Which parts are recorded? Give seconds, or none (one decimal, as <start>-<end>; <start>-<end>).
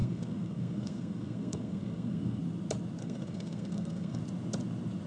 2.4-3.0; 4.2-5.1